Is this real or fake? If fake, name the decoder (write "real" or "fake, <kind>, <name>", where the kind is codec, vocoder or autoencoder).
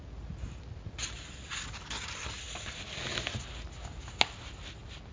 real